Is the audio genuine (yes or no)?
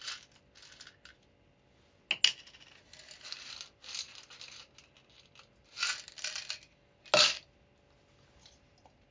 yes